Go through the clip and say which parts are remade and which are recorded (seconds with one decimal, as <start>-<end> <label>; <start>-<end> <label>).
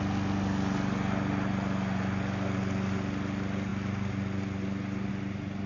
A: 0.0-5.7 recorded